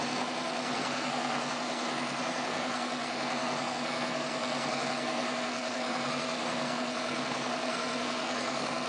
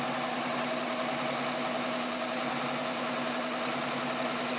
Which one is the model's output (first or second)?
first